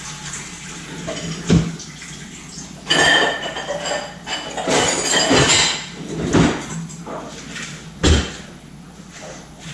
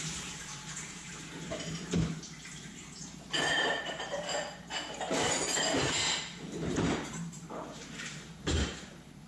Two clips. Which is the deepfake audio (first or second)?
second